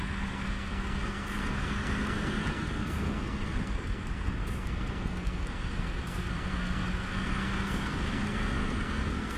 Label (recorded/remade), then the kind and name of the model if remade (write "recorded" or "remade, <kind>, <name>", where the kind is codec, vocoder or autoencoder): remade, codec, SNAC